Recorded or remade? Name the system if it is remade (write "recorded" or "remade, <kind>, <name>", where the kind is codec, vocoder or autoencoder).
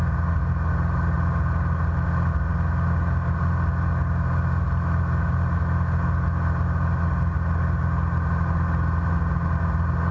recorded